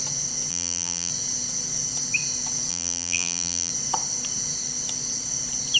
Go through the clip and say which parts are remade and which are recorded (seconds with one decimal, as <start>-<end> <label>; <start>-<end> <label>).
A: 0.0-0.5 recorded; 0.5-1.1 remade; 1.1-2.7 recorded; 2.7-3.7 remade; 3.7-5.8 recorded